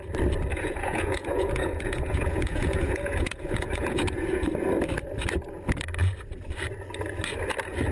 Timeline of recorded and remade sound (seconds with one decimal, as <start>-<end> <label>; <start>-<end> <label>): 0.0-0.5 recorded; 0.5-4.5 remade; 4.5-7.9 recorded